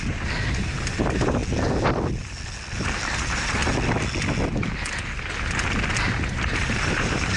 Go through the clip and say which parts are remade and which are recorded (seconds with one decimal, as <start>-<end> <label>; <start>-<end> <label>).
0.0-1.4 remade; 1.4-3.1 recorded; 3.1-3.6 remade; 3.6-6.4 recorded; 6.4-7.4 remade